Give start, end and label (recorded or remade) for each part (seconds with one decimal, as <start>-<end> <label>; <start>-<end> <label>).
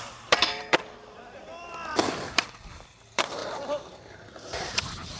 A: 0.0-5.2 remade